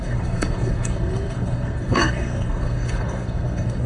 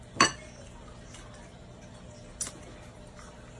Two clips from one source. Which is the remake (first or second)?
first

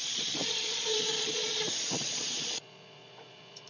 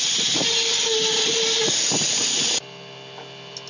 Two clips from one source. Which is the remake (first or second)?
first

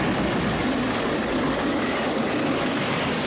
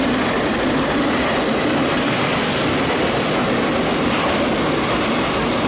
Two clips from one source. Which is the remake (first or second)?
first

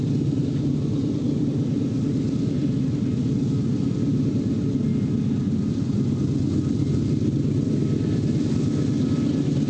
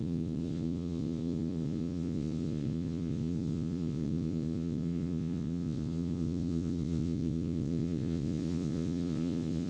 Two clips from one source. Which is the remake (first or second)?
second